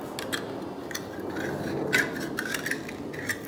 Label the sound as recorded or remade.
recorded